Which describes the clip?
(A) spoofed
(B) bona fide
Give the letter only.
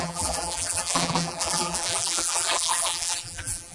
A